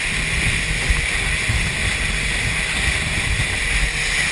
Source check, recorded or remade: recorded